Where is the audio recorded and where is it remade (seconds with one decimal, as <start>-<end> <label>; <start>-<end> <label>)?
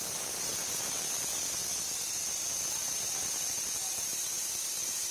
0.0-1.6 recorded; 1.6-2.2 remade; 2.2-5.1 recorded